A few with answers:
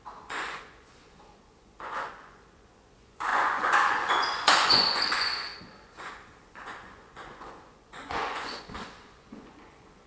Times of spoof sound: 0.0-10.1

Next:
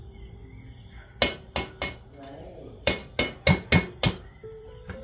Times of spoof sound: 0.0-0.4; 2.5-3.0; 4.1-5.0

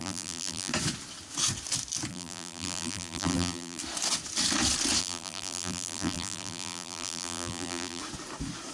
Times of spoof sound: 0.0-0.7; 2.1-3.8; 5.0-8.0

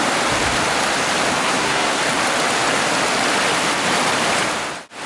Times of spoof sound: 1.4-2.0